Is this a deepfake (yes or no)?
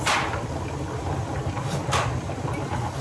no